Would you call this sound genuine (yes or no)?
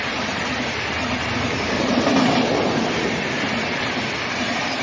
yes